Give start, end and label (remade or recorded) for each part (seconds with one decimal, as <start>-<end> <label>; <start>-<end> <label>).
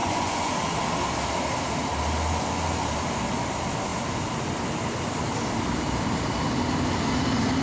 0.0-0.5 remade; 0.5-7.6 recorded